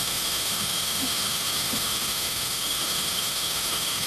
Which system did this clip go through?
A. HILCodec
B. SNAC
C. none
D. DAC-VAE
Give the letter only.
D